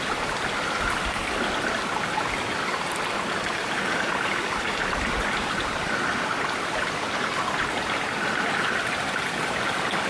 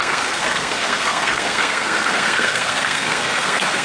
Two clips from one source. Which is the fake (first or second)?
second